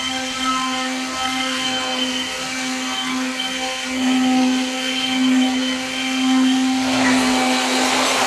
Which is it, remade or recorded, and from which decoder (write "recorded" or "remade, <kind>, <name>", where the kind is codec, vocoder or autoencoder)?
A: remade, codec, SNAC